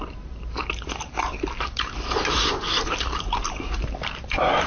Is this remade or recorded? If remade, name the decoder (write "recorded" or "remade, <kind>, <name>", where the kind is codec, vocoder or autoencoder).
remade, vocoder, BigVGAN v2